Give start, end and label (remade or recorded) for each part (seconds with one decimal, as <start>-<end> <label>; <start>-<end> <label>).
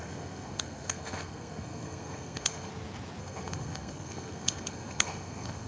0.0-2.7 remade; 2.7-3.2 recorded; 3.2-5.7 remade